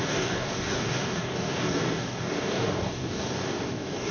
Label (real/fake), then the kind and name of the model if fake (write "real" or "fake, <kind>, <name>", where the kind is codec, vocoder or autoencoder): fake, codec, DAC